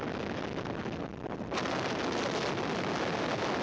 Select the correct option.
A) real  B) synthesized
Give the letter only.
A